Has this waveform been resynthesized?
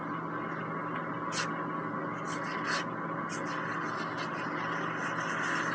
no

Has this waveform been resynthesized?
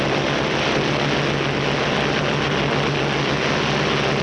no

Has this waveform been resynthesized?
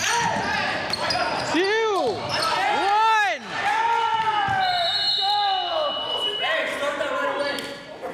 no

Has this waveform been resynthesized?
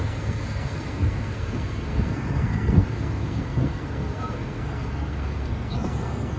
yes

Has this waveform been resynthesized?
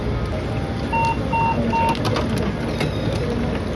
no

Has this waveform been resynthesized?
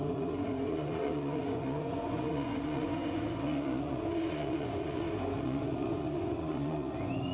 yes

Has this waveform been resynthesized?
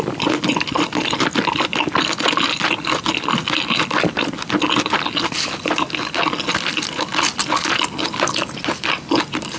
no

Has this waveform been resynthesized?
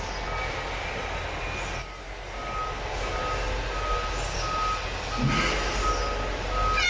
no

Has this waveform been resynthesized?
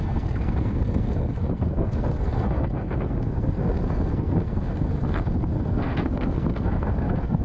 yes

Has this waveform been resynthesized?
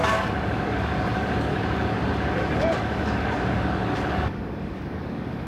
yes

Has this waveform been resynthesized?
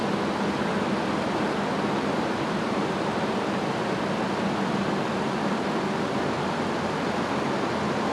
no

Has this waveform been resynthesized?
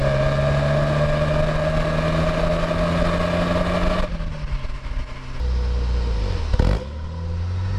no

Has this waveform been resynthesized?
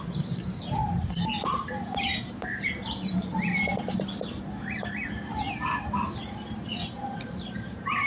yes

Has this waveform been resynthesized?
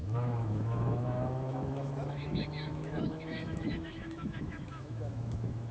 yes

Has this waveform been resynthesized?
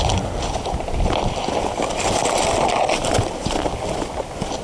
no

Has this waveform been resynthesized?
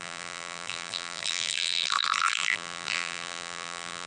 yes